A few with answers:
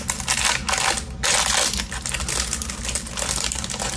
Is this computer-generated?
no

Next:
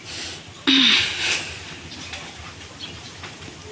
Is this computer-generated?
no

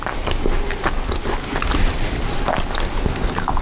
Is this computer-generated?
no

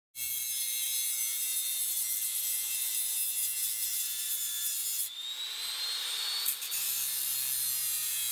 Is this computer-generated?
no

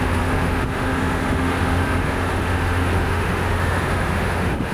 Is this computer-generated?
yes